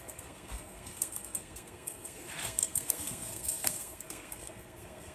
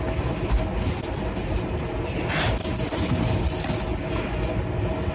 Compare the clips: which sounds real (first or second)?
second